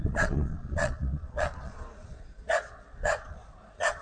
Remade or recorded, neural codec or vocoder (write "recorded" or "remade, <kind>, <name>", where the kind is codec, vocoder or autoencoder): remade, vocoder, Vocos